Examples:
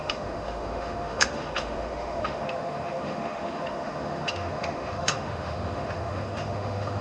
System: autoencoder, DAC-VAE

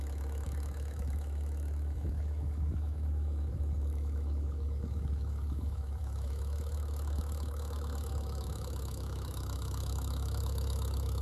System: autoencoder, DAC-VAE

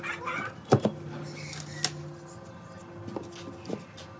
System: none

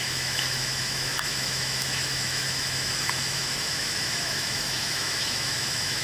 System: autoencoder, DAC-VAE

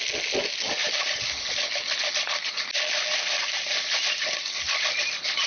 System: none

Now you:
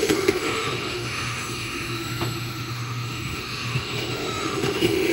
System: autoencoder, DAC-VAE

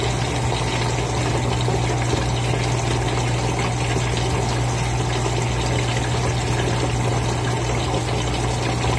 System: none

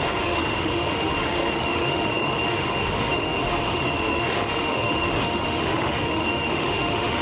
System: autoencoder, DAC-VAE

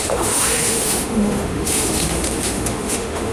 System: autoencoder, DAC-VAE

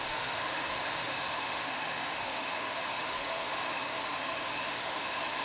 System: autoencoder, DAC-VAE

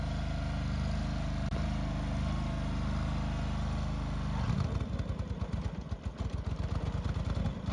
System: none